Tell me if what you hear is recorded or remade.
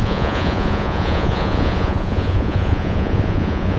remade